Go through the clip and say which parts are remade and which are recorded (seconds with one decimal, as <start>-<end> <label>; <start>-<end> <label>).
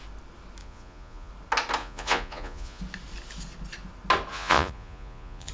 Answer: 0.0-0.6 recorded; 0.6-1.3 remade; 1.3-1.8 recorded; 1.8-2.8 remade; 2.8-4.3 recorded; 4.3-5.5 remade